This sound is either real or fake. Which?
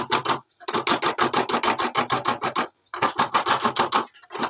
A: real